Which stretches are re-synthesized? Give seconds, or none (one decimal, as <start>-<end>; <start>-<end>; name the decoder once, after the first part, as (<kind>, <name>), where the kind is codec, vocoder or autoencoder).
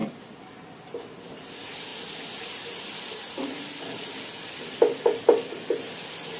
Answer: none